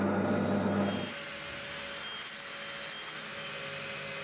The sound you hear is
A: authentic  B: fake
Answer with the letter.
A